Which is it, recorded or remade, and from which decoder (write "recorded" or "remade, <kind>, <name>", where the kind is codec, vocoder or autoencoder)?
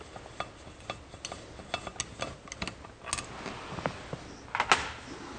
recorded